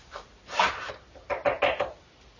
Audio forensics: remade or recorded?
recorded